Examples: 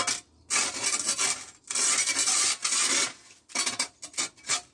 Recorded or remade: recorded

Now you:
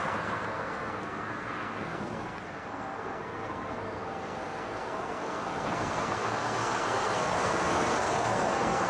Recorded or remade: remade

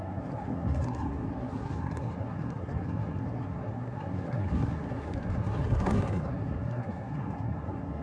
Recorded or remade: remade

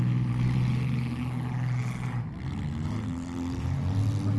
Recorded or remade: recorded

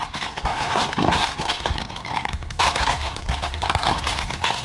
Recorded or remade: remade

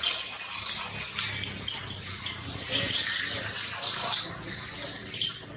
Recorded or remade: recorded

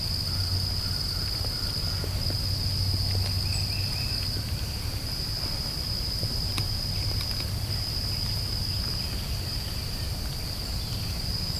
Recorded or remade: recorded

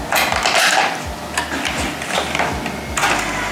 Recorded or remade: recorded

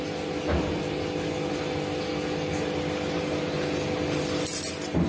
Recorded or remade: recorded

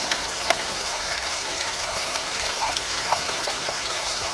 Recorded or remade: remade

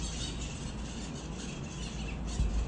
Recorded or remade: recorded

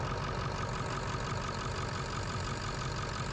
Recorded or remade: recorded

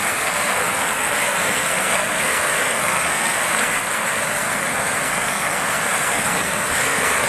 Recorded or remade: remade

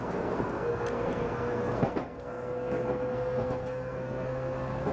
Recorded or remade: remade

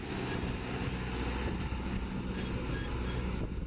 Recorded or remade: recorded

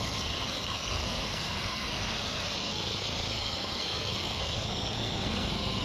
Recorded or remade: remade